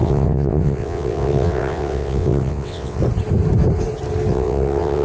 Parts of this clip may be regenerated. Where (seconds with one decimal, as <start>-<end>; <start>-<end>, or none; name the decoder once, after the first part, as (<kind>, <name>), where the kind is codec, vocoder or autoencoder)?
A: 0.0-3.0 (vocoder, WaveNeXt); 4.3-5.0